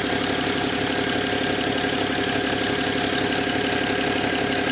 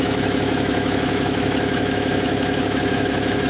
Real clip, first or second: first